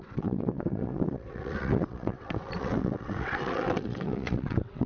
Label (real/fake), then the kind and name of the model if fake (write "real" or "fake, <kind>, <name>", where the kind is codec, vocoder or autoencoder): fake, vocoder, WaveNeXt